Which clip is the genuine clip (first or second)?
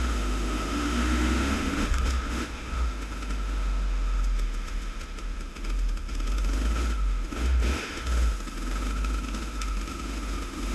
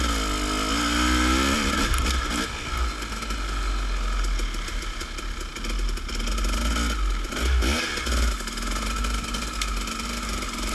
second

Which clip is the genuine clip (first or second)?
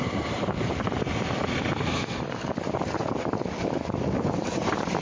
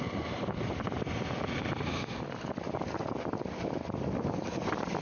second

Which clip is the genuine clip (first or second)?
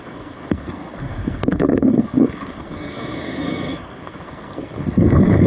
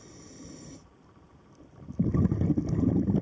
second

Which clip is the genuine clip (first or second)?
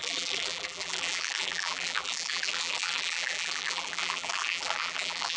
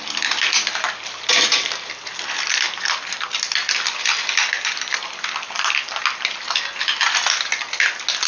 second